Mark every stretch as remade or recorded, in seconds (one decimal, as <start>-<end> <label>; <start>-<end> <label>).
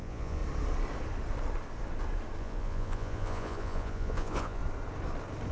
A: 0.0-0.4 remade; 0.4-2.4 recorded; 2.4-4.6 remade; 4.6-5.5 recorded